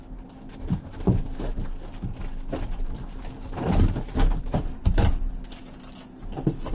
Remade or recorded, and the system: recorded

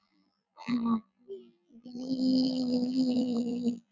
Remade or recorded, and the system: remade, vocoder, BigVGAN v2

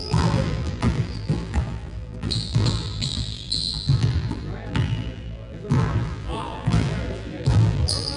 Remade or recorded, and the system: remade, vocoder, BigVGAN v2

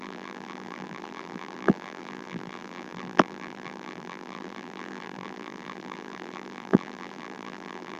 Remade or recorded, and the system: remade, vocoder, BigVGAN v2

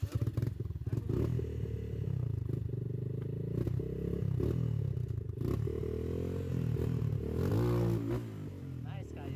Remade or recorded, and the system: recorded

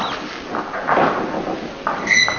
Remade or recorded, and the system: recorded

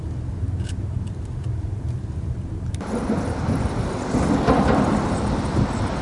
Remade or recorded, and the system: remade, vocoder, BigVGAN v2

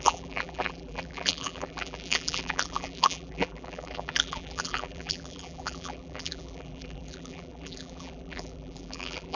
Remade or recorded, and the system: remade, vocoder, BigVGAN v2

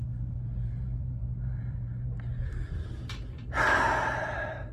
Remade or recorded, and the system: remade, vocoder, BigVGAN v2